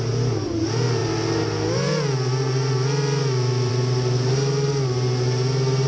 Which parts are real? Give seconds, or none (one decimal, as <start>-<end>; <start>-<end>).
0.0-5.9